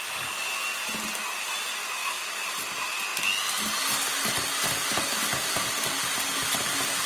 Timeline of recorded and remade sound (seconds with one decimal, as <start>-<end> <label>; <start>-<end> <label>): 0.0-2.0 recorded; 2.0-2.5 remade; 2.5-7.1 recorded